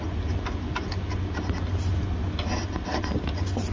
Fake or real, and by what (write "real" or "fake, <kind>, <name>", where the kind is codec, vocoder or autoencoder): real